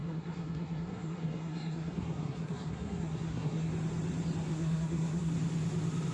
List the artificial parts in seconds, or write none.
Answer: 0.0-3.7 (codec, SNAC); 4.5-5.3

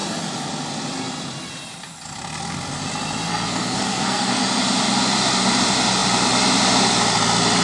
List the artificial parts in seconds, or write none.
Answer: 3.3-4.4 (codec, SNAC)

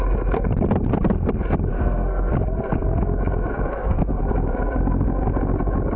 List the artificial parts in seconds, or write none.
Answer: 1.7-2.3 (codec, SNAC); 3.5-4.2

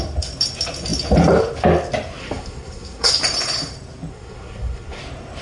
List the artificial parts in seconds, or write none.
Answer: 2.2-3.1 (codec, SNAC); 4.1-5.0

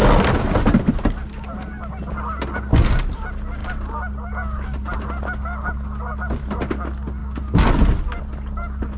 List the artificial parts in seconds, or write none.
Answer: none